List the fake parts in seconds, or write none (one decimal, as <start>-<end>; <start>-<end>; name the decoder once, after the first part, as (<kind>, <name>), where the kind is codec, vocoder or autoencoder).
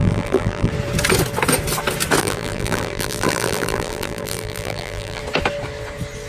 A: 0.0-0.7 (vocoder, BigVGAN v2); 2.2-5.2